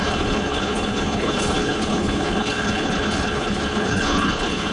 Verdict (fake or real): fake